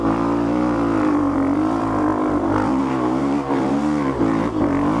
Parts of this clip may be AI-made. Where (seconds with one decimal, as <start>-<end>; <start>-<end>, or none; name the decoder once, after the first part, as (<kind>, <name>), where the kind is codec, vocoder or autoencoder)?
0.0-5.0 (vocoder, BigVGAN v2)